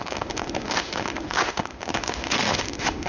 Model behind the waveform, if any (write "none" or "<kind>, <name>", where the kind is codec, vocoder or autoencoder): autoencoder, DAC-VAE